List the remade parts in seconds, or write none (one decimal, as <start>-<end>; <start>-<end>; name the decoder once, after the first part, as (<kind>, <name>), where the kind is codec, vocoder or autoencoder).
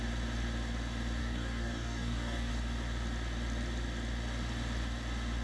1.2-2.5 (codec, DAC)